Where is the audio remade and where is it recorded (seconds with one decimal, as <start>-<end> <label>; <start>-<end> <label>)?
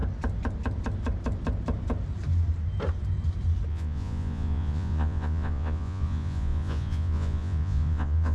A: 0.0-3.7 recorded; 3.7-8.3 remade